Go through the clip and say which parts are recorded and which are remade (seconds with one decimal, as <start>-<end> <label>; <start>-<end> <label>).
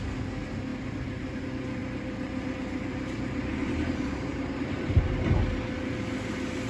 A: 0.0-1.8 recorded; 1.8-5.1 remade; 5.1-6.7 recorded